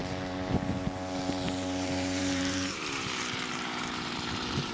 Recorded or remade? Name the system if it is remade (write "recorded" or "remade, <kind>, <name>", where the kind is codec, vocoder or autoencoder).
remade, vocoder, BigVGAN v2